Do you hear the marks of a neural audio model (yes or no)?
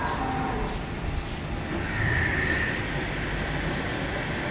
no